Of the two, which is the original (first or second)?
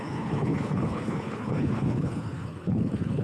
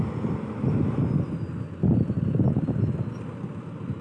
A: second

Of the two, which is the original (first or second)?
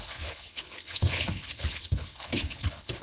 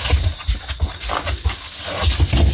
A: second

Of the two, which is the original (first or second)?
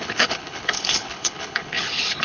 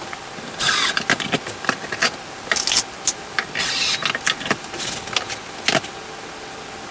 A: second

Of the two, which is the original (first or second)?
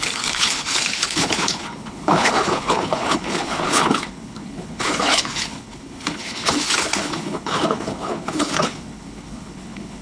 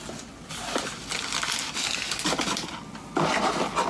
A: second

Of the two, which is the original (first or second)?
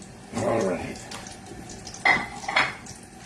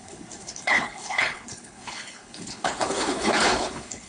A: first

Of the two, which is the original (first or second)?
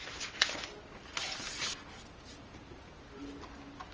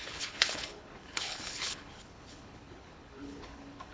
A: first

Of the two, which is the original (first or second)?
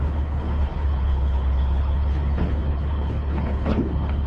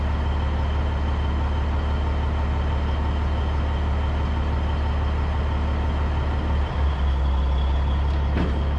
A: second